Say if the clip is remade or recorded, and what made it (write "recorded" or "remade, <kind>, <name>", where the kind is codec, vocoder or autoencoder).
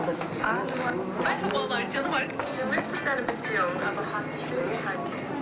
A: recorded